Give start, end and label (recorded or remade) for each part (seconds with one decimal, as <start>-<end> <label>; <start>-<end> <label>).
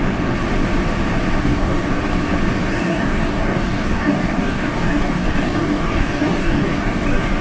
0.0-1.4 recorded; 1.4-2.0 remade; 2.0-2.7 recorded; 2.7-7.4 remade